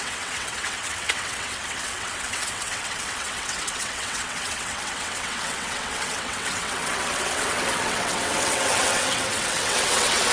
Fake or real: fake